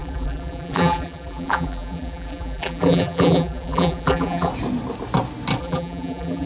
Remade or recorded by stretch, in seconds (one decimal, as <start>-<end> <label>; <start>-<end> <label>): 0.0-4.5 remade; 4.5-5.6 recorded; 5.6-6.5 remade